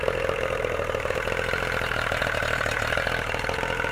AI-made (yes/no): yes